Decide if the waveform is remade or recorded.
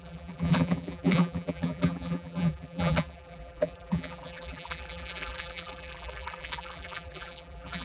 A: remade